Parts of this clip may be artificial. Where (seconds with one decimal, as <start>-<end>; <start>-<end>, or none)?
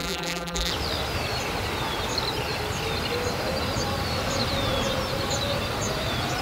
0.0-0.7